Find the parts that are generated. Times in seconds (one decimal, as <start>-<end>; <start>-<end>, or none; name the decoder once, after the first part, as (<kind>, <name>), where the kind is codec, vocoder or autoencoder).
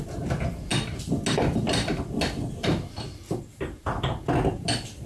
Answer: none